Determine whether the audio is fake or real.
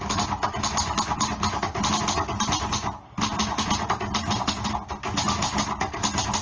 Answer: real